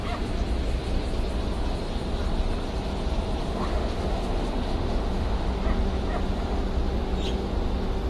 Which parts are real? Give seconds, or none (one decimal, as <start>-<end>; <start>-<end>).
0.0-3.4; 5.5-8.1